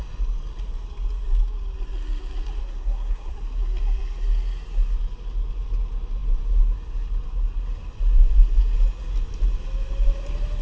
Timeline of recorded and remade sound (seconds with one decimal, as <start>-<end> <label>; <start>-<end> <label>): 0.0-2.6 recorded; 2.6-3.3 remade; 3.3-10.6 recorded